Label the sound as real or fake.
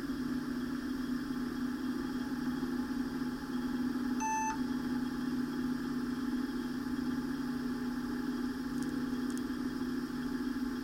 real